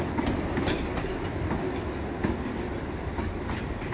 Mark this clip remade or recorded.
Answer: recorded